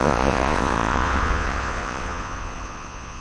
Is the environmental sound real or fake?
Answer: fake